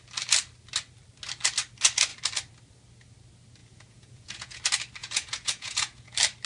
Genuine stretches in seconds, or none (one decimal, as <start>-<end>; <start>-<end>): 0.0-3.6; 4.6-5.0; 6.1-6.5